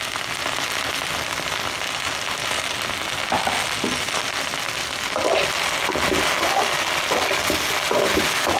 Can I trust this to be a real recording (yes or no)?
yes